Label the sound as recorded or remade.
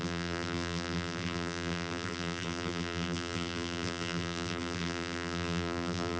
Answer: remade